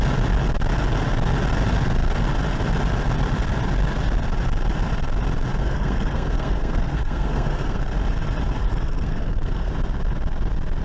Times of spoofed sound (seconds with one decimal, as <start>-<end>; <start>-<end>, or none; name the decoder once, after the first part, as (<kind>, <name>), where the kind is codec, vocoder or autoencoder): 5.6-7.8 (codec, SNAC); 8.6-9.7